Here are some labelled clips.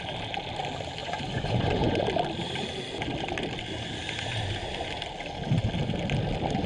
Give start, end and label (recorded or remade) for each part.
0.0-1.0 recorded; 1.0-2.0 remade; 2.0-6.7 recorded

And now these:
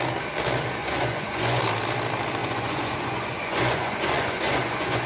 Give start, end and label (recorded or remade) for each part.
0.0-0.8 recorded; 0.8-1.6 remade; 1.6-2.4 recorded; 2.4-5.1 remade

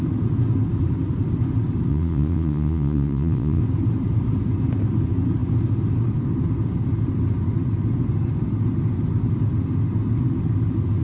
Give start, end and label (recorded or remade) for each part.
0.0-1.9 recorded; 1.9-3.6 remade; 3.6-11.0 recorded

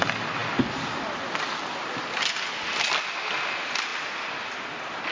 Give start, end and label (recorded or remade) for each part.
0.0-5.1 recorded

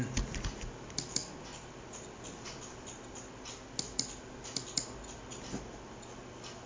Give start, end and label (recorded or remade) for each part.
0.0-6.7 recorded

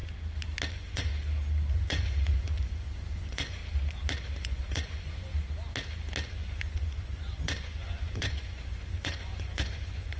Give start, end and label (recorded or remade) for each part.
0.0-0.7 recorded; 0.7-1.1 remade; 1.1-1.7 recorded; 1.7-3.6 remade; 3.6-4.4 recorded; 4.4-5.3 remade; 5.3-6.3 recorded; 6.3-10.2 remade

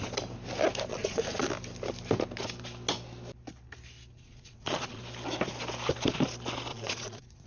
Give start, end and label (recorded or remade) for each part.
0.0-0.9 recorded; 0.9-1.5 remade; 1.5-4.1 recorded; 4.1-5.0 remade; 5.0-6.7 recorded; 6.7-7.5 remade

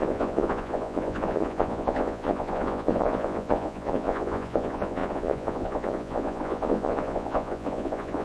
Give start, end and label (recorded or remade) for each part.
0.0-8.2 remade